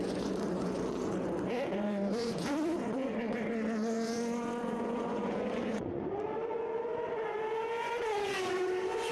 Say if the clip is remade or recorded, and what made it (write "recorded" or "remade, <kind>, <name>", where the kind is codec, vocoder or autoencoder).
remade, vocoder, Vocos